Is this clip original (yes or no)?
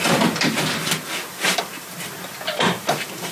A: no